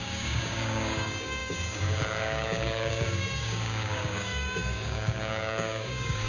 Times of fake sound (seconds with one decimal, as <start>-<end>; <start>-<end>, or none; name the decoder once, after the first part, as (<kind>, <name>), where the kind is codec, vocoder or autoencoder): 0.0-6.3 (codec, DAC)